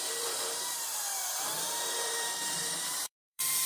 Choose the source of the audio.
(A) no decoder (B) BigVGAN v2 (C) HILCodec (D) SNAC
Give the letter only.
B